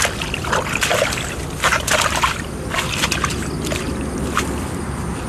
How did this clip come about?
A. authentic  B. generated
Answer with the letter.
A